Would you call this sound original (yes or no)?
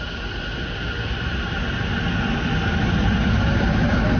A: yes